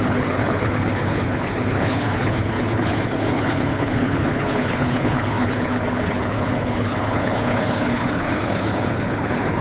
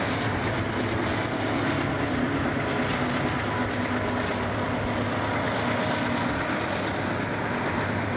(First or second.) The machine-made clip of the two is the first